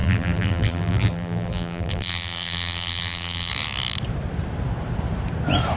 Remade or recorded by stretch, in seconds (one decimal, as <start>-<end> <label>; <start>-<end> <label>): 0.0-3.5 remade; 3.5-5.8 recorded